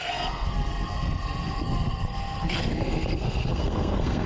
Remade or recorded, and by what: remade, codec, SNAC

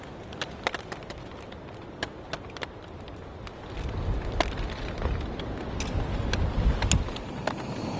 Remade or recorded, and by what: recorded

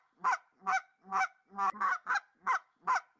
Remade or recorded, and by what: recorded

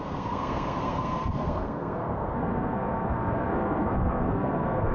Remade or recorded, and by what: remade, codec, SNAC